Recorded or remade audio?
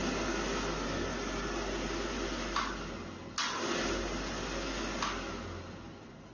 recorded